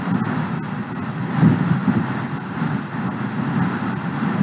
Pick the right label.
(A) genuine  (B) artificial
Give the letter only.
A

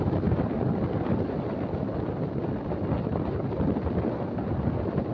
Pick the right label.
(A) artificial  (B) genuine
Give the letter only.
A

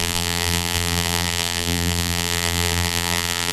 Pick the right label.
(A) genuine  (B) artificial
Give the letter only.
B